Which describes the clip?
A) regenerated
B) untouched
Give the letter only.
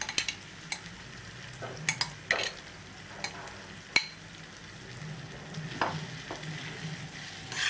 B